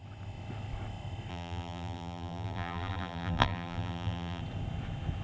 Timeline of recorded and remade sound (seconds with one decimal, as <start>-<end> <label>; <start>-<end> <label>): 0.0-1.3 recorded; 1.3-4.4 remade; 4.4-5.2 recorded